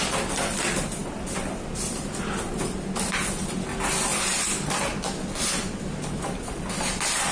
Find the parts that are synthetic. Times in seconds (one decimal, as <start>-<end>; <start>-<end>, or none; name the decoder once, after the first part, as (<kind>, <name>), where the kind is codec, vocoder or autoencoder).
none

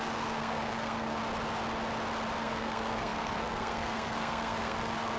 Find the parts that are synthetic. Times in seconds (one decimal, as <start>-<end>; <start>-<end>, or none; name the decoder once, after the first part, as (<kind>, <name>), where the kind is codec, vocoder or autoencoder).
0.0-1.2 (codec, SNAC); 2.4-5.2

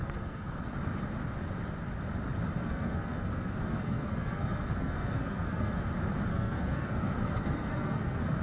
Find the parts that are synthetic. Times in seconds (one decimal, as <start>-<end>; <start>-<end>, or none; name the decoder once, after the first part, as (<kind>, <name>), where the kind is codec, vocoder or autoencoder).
0.0-0.6 (codec, SNAC); 2.6-5.8; 6.3-8.4